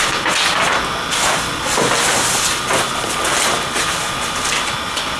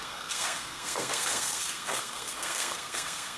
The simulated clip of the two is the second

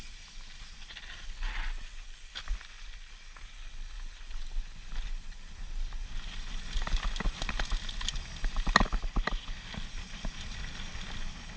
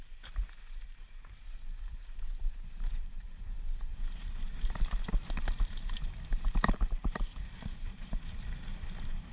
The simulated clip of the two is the second